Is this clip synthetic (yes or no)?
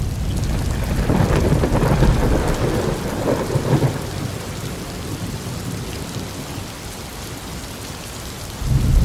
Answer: no